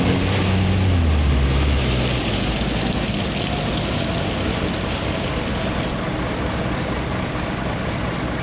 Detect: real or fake real